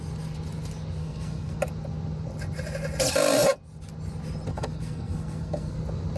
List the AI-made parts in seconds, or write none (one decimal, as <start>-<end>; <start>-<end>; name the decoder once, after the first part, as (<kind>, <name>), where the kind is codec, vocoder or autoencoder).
1.0-1.6 (codec, SNAC); 4.5-5.8